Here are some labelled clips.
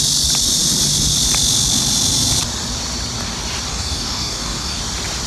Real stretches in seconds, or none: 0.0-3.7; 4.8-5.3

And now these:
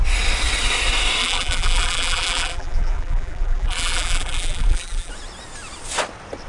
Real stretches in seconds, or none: 0.0-1.2; 5.1-6.5

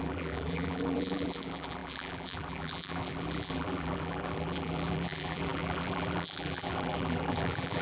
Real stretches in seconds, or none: none